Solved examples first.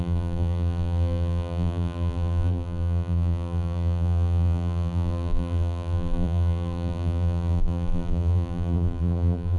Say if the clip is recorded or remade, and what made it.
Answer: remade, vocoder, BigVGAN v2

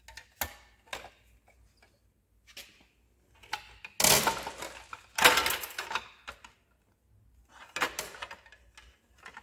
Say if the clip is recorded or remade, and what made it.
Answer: recorded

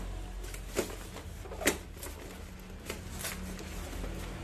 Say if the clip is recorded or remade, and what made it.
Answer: recorded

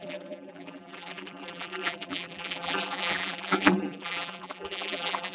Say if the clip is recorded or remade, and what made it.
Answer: remade, vocoder, BigVGAN v2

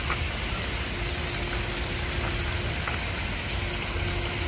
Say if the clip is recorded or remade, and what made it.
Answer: recorded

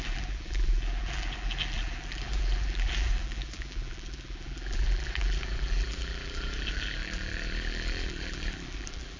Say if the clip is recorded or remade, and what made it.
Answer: remade, vocoder, BigVGAN v2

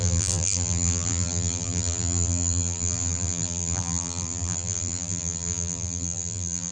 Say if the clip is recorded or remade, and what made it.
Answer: remade, vocoder, BigVGAN v2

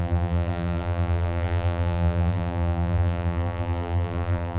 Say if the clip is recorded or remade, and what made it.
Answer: remade, vocoder, BigVGAN v2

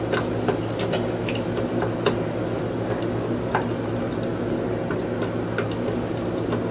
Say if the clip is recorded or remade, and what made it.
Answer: recorded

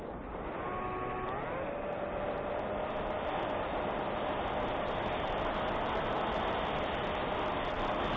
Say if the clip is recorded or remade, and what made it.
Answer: recorded